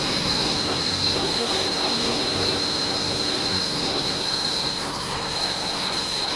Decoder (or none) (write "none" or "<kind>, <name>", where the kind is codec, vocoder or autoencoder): codec, SNAC